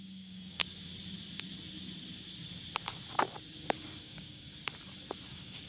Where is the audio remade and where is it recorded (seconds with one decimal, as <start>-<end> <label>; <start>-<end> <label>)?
0.0-0.6 remade; 0.6-4.0 recorded; 4.0-4.5 remade; 4.5-5.3 recorded; 5.3-5.7 remade